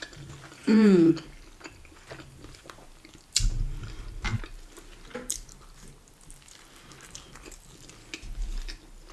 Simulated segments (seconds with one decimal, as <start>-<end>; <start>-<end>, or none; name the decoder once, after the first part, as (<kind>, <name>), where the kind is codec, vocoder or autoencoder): 0.6-1.1 (vocoder, Vocos)

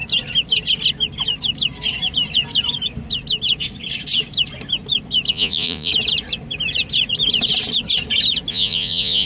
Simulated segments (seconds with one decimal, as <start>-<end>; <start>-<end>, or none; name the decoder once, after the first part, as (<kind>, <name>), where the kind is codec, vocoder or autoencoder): 5.3-5.9 (vocoder, Vocos); 8.5-9.3